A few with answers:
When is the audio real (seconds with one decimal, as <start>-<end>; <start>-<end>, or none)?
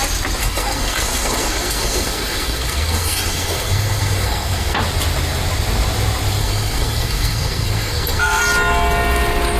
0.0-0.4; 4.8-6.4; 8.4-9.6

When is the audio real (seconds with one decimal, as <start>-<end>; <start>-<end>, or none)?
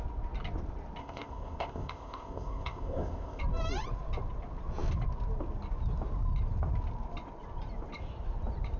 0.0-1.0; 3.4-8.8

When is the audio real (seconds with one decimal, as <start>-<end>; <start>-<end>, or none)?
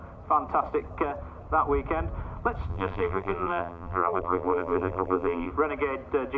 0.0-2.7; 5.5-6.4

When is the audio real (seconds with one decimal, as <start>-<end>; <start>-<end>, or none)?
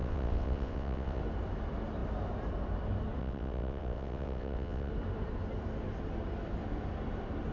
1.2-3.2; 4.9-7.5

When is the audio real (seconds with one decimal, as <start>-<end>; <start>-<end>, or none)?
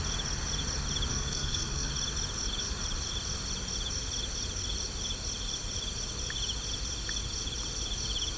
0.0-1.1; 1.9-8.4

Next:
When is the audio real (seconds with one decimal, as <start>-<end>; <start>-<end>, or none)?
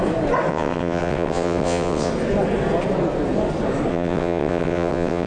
0.0-0.5; 2.1-3.9